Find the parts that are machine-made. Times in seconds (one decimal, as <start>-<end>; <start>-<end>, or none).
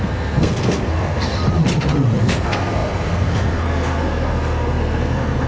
0.0-1.3; 2.2-5.5